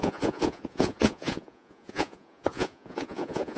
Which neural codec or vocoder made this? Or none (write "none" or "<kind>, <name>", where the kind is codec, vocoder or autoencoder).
vocoder, Vocos